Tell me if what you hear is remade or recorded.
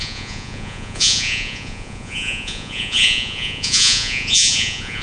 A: remade